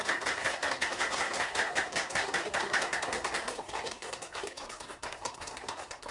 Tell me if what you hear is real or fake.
fake